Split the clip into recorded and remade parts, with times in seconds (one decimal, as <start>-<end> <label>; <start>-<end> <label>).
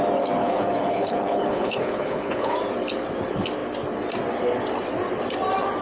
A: 0.0-0.4 recorded; 0.4-2.5 remade; 2.5-5.8 recorded